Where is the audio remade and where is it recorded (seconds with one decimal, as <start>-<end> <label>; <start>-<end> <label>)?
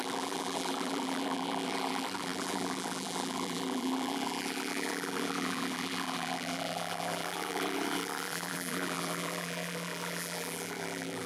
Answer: 0.0-11.3 remade